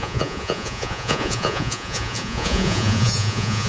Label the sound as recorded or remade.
remade